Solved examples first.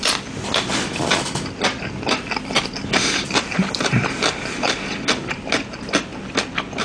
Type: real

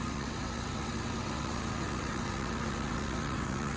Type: fake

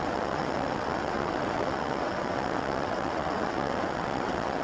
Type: fake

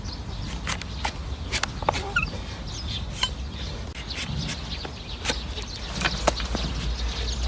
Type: real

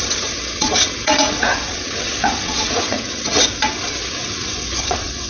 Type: fake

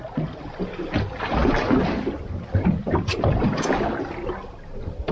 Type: real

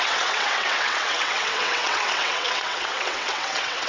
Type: fake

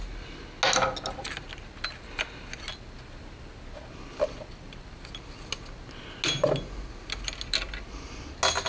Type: real